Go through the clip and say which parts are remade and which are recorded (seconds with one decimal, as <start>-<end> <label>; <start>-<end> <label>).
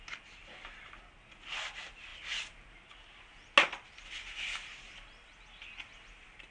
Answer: 0.0-6.5 recorded